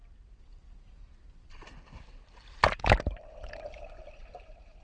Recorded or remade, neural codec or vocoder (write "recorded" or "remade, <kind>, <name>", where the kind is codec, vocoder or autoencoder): remade, vocoder, BigVGAN v2